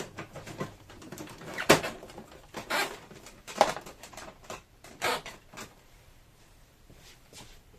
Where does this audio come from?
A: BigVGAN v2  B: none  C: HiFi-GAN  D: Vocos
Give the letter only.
A